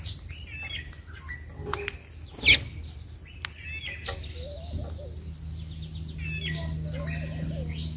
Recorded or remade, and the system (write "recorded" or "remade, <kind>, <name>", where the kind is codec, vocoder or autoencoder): recorded